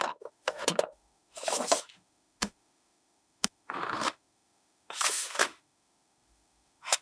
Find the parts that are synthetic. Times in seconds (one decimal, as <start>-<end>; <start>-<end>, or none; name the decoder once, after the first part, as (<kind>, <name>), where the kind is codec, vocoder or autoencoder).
0.0-7.0 (autoencoder, DAC-VAE)